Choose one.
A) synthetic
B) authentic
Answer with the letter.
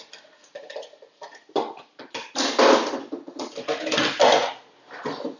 B